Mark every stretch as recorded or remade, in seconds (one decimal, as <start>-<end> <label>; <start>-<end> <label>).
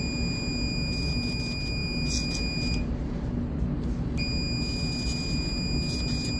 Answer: 0.0-6.4 recorded